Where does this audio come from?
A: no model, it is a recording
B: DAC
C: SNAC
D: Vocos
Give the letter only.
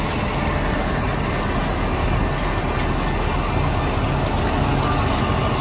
A